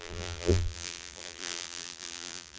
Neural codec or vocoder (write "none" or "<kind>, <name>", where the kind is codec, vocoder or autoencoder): vocoder, BigVGAN v2